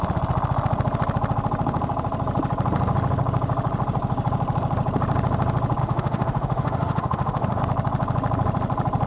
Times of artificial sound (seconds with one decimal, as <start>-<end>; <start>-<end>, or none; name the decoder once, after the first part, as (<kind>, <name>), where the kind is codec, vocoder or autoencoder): 5.8-7.6 (autoencoder, DAC-VAE)